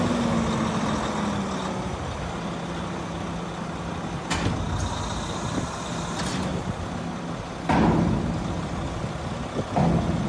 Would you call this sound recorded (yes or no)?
yes